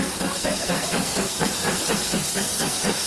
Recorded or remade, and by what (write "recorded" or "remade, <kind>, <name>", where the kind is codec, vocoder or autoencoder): remade, codec, SNAC